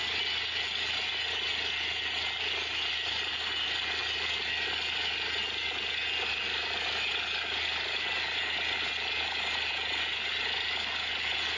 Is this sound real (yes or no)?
yes